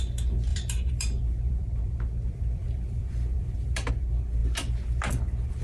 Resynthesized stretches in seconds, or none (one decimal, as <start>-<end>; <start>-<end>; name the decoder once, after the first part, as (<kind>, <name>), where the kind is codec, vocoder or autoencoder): 0.5-3.9 (vocoder, BigVGAN v2); 4.4-5.0